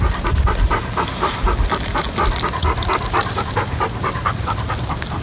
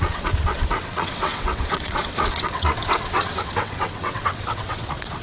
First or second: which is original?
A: first